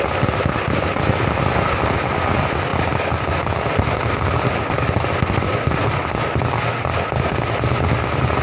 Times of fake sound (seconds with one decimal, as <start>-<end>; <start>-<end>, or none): none